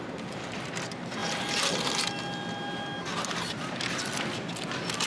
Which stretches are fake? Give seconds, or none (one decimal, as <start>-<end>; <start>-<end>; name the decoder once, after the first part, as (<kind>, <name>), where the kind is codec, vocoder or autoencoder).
1.2-1.9 (vocoder, BigVGAN v2)